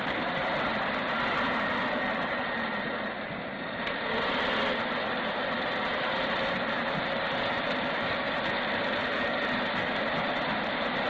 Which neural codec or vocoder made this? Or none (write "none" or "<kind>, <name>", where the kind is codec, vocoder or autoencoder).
none